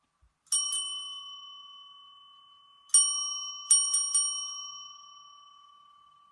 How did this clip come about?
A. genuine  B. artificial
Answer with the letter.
A